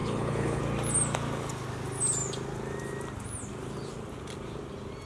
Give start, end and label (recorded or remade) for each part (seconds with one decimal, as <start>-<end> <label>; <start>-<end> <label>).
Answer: 0.0-0.6 remade; 0.6-5.1 recorded

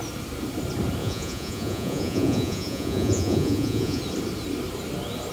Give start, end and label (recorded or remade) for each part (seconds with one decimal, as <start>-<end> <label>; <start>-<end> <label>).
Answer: 0.0-1.0 recorded; 1.0-4.0 remade; 4.0-5.3 recorded